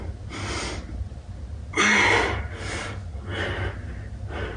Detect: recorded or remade recorded